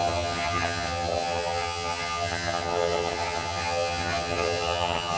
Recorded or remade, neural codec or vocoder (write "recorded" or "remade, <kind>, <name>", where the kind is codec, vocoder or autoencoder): remade, vocoder, HiFi-GAN